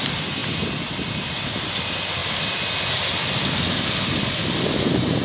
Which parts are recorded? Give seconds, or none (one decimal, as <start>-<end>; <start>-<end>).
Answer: 0.0-5.2

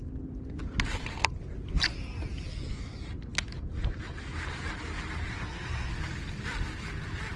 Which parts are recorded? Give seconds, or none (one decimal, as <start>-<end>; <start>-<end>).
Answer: 0.0-5.3; 5.9-7.4

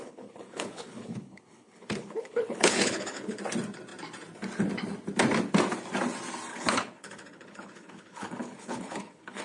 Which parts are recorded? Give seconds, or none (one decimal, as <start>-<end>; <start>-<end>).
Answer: 3.4-6.5